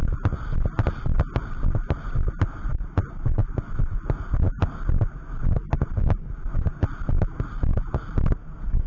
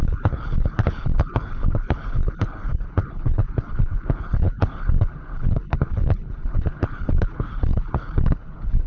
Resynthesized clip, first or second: second